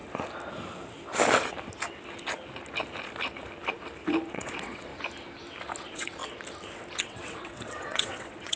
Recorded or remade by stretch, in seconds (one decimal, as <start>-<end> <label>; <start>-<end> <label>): 0.0-4.3 recorded; 4.3-4.9 remade; 4.9-5.8 recorded; 5.8-6.2 remade; 6.2-7.0 recorded; 7.0-8.6 remade